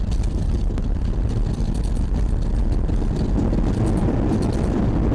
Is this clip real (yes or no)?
yes